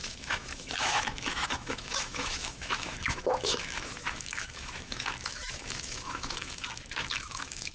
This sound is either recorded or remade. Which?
remade